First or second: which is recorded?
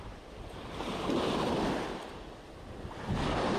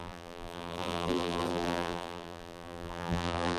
first